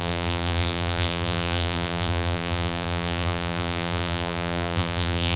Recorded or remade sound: remade